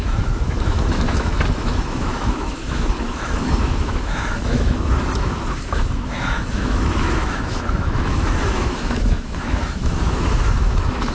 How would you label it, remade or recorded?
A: remade